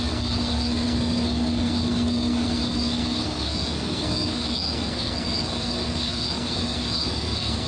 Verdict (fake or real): fake